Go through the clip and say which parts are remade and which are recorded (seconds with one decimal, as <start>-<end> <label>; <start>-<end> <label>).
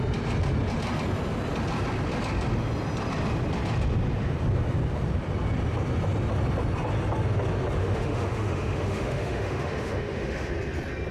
0.0-7.8 recorded; 7.8-10.5 remade; 10.5-11.1 recorded